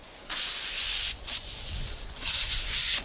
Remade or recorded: remade